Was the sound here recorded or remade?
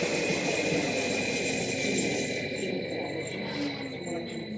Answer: recorded